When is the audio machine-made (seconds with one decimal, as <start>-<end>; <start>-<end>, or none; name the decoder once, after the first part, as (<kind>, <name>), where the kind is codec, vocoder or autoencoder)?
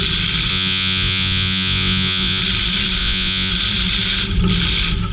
0.5-2.4 (vocoder, Vocos); 3.0-3.5